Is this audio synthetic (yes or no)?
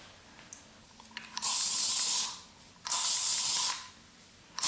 no